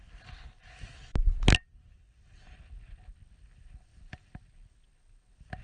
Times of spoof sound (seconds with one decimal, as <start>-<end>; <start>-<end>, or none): none